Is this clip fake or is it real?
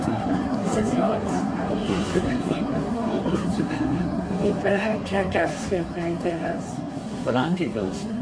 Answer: fake